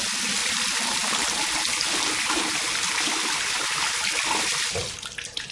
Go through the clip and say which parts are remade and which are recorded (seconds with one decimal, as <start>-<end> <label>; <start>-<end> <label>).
0.0-5.5 recorded